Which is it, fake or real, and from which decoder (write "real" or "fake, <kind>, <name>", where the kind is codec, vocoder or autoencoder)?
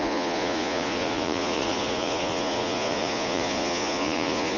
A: fake, vocoder, Vocos